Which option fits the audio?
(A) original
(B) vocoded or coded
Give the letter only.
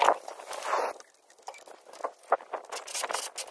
A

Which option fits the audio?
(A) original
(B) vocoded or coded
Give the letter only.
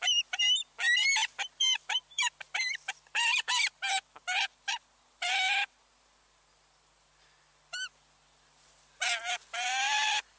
B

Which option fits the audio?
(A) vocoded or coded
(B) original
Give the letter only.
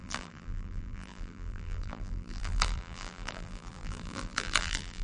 A